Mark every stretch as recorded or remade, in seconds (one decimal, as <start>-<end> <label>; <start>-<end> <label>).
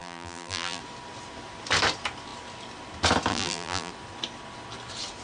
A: 0.0-0.8 remade; 0.8-3.3 recorded; 3.3-3.9 remade; 3.9-5.2 recorded